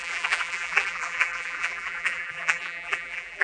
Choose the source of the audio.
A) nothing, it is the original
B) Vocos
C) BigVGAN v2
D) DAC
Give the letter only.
C